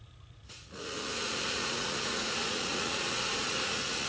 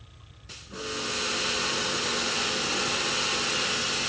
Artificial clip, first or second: first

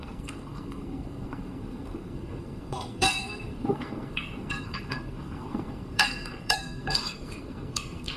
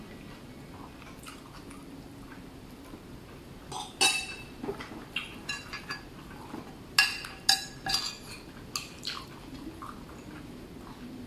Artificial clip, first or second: first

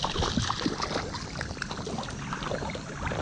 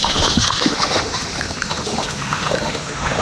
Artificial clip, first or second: second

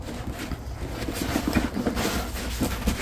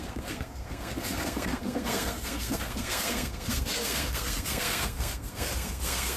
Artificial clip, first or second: second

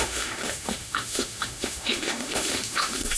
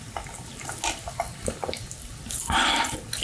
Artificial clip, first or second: first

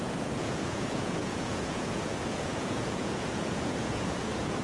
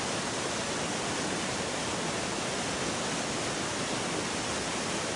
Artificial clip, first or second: first